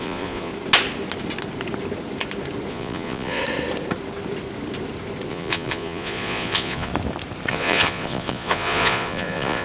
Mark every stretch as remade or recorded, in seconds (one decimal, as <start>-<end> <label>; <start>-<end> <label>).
0.0-0.5 remade; 0.5-2.7 recorded; 2.7-3.4 remade; 3.4-5.3 recorded; 5.3-6.9 remade; 6.9-7.5 recorded; 7.5-9.6 remade